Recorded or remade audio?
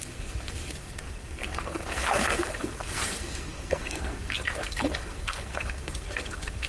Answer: remade